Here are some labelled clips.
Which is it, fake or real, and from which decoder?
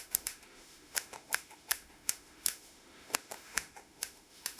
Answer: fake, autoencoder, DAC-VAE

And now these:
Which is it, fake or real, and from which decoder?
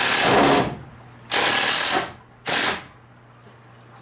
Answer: real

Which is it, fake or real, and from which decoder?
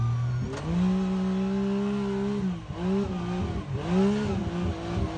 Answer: real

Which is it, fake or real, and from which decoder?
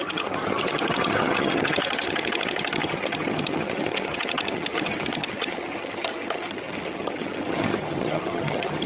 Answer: fake, vocoder, HiFi-GAN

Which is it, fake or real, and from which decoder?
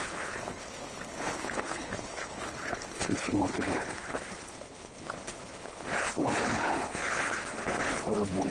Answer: fake, codec, HILCodec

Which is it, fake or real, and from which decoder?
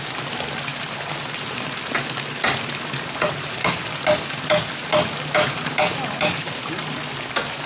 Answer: real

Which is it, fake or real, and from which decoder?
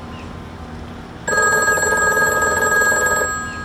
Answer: real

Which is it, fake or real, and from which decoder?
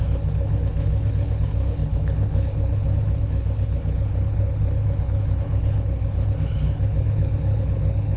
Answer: fake, codec, HILCodec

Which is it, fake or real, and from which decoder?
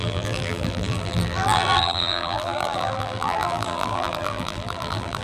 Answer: fake, vocoder, BigVGAN v2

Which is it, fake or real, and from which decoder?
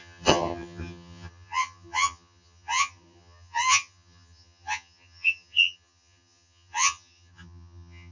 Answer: fake, vocoder, HiFi-GAN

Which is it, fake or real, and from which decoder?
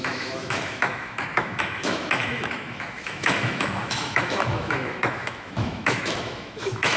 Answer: fake, autoencoder, DAC-VAE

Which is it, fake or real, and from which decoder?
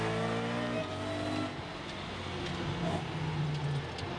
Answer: real